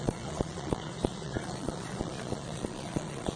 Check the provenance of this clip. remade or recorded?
remade